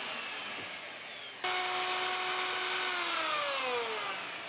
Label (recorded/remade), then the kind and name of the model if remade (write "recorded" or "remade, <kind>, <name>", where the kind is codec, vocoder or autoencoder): recorded